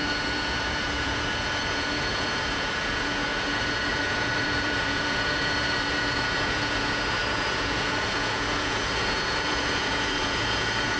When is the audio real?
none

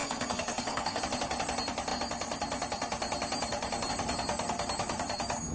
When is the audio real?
1.0-5.5

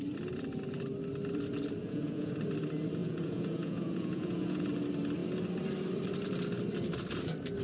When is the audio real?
0.0-1.8; 2.3-3.0; 4.7-7.6

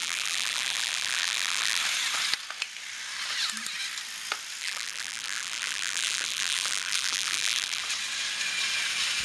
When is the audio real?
1.8-4.6; 7.8-9.2

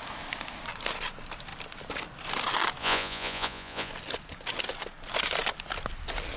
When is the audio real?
0.0-2.8; 3.9-6.4